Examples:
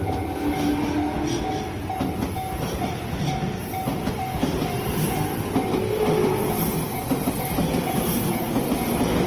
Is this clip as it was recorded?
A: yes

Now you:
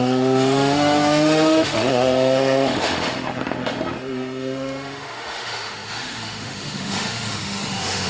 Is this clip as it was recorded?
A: no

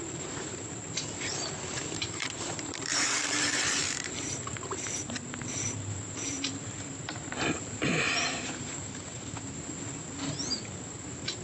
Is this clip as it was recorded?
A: no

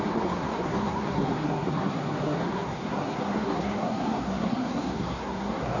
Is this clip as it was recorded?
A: no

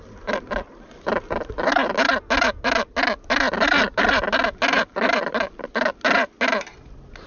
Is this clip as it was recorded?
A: yes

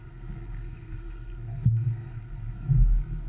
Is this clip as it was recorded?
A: no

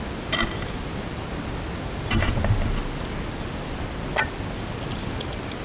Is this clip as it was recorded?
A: yes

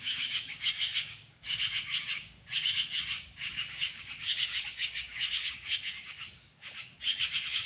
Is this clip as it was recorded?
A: no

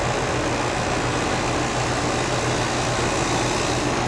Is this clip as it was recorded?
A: yes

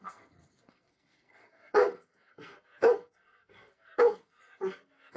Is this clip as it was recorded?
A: no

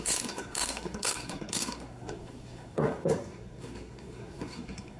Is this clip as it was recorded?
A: no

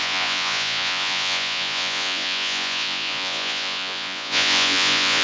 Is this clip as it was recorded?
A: no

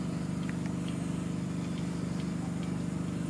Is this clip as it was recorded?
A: yes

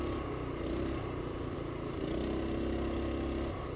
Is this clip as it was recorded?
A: yes